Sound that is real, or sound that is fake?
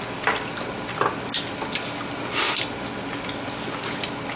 real